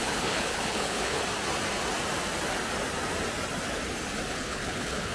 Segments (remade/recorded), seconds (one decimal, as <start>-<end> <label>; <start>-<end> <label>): 0.0-1.2 remade; 1.2-4.3 recorded; 4.3-5.1 remade

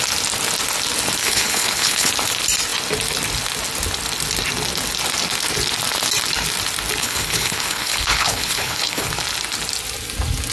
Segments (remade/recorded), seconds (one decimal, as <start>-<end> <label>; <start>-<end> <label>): 0.0-1.2 recorded; 1.2-2.1 remade; 2.1-7.0 recorded; 7.0-9.1 remade; 9.1-10.5 recorded

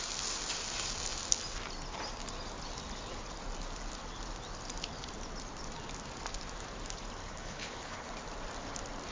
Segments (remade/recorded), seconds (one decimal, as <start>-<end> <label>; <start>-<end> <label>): 0.0-7.2 recorded; 7.2-8.1 remade; 8.1-9.1 recorded

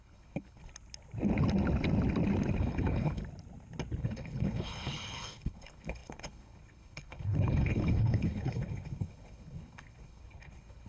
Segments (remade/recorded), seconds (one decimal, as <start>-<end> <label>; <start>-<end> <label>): 0.0-0.6 remade; 0.6-2.6 recorded; 2.6-3.2 remade; 3.2-4.0 recorded; 4.0-10.9 remade

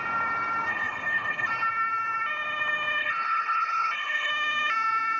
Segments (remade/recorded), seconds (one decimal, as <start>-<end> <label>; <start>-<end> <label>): 0.0-0.7 recorded; 0.7-1.5 remade; 1.5-3.0 recorded; 3.0-4.3 remade; 4.3-5.2 recorded

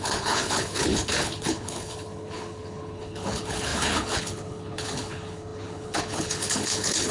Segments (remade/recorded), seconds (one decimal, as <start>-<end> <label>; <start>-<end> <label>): 0.0-7.1 remade

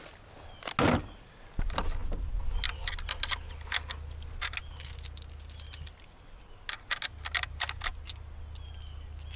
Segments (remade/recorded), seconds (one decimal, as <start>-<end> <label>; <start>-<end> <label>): 0.0-9.4 recorded

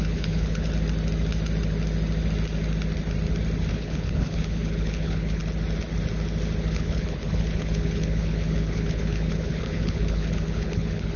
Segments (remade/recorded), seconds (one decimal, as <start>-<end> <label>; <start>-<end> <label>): 0.0-0.7 remade; 0.7-3.7 recorded; 3.7-5.4 remade; 5.4-6.7 recorded; 6.7-11.2 remade